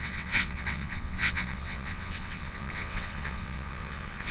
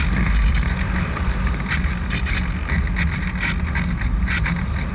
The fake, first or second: first